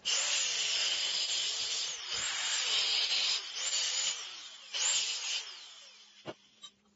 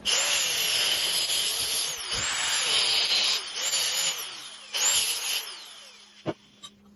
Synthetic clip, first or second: first